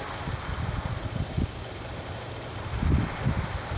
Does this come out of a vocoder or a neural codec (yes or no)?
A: no